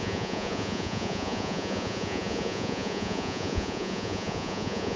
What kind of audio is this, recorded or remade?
remade